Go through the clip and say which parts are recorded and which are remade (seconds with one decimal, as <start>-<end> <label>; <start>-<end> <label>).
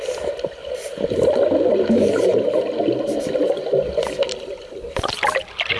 0.0-5.8 recorded